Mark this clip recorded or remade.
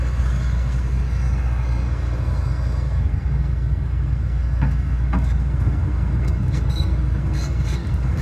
remade